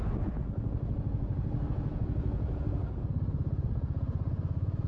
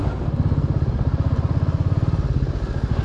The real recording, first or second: second